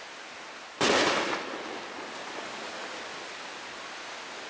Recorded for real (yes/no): yes